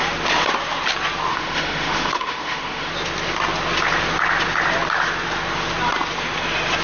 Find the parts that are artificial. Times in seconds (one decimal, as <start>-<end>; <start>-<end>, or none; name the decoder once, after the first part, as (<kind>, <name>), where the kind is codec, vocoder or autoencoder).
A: 1.3-2.9 (autoencoder, DAC-VAE)